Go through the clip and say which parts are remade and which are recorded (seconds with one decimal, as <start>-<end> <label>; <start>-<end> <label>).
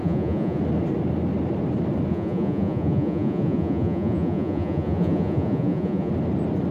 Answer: 0.0-0.6 remade; 0.6-2.1 recorded; 2.1-6.1 remade; 6.1-6.7 recorded